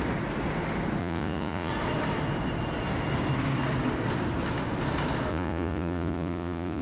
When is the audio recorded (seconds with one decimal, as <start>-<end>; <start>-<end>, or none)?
0.0-1.0; 1.7-5.3